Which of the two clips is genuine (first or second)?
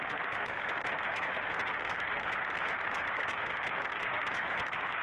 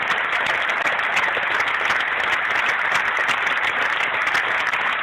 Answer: second